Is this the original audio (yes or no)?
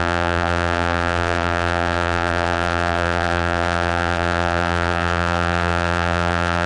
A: no